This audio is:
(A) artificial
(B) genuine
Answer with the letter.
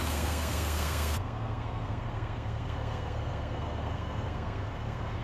A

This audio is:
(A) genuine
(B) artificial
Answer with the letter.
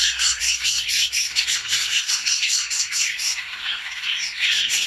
B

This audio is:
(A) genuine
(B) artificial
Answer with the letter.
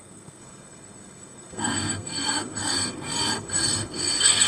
B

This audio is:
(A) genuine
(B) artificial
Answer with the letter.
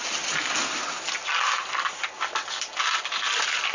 A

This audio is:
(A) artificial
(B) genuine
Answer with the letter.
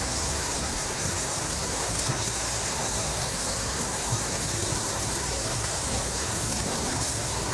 A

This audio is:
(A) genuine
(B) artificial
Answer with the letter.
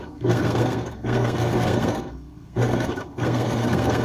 B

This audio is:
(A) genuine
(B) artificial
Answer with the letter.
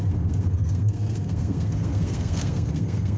B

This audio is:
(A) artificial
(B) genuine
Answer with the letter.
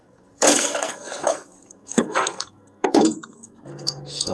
A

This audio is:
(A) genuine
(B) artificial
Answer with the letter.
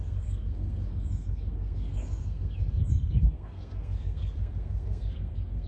B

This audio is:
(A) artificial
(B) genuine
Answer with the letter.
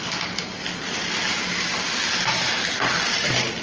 B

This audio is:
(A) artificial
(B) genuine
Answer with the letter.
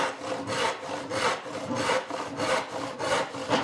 B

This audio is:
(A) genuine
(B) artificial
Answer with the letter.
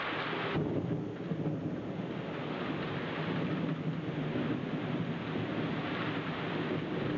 A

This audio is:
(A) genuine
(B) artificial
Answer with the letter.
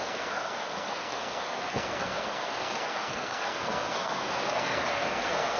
B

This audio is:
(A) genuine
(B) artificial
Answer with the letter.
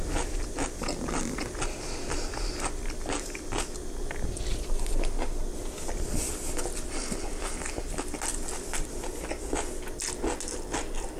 A